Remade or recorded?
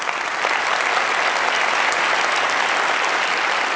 recorded